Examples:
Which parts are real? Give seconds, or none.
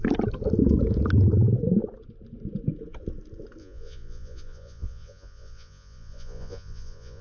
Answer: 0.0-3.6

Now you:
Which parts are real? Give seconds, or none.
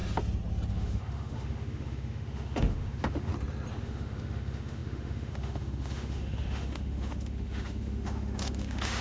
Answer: 0.0-0.7; 3.3-3.8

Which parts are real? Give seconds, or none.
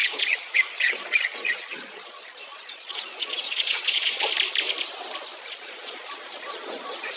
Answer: 4.3-5.3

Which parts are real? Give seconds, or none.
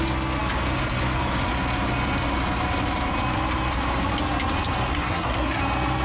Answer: 0.0-4.9; 5.6-6.0